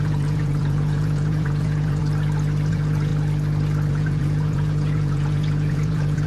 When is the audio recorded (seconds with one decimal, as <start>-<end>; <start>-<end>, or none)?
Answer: 2.0-2.7; 3.1-3.9